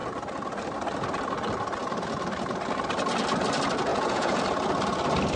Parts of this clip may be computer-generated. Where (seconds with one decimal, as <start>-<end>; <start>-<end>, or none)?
3.9-4.4